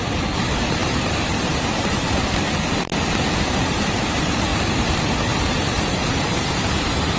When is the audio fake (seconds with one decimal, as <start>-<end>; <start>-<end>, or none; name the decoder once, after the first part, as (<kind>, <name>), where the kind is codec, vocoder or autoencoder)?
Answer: 0.0-7.2 (vocoder, BigVGAN v2)